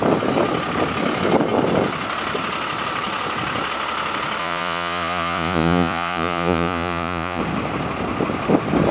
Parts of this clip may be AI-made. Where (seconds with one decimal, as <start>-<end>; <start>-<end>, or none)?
4.4-7.4